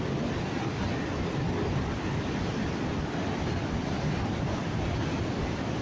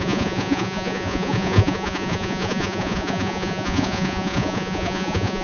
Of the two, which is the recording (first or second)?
first